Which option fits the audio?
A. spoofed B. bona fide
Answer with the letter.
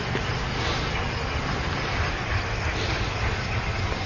B